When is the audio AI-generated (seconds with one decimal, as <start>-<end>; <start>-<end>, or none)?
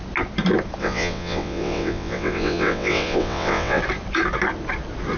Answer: 0.8-3.8